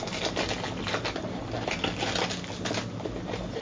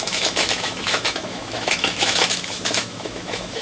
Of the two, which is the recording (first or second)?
first